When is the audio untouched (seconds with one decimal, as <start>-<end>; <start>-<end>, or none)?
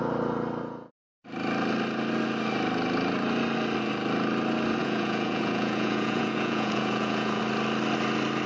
0.0-4.8; 7.4-8.5